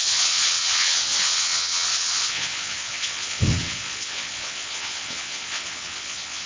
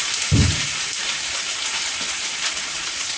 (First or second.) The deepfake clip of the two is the first